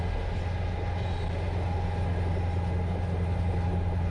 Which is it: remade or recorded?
recorded